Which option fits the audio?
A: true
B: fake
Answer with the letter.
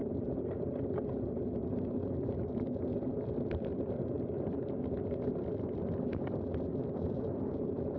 B